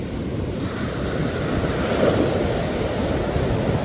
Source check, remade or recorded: recorded